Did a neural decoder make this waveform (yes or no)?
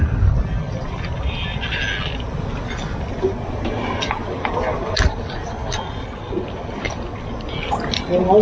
no